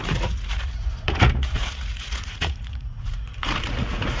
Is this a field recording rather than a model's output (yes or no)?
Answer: no